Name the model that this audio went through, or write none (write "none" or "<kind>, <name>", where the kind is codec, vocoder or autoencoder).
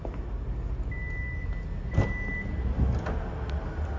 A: none